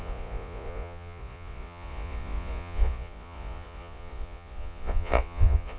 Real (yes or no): no